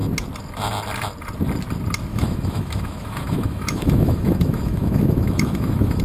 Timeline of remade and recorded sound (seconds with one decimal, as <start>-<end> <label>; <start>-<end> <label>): 0.0-2.1 recorded; 2.1-6.0 remade

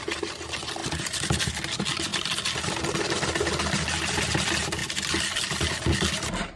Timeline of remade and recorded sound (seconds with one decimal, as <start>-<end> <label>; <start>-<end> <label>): 0.0-6.6 recorded

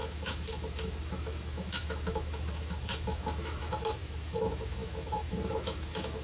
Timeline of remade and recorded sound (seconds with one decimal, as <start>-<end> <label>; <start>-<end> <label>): 0.0-6.2 remade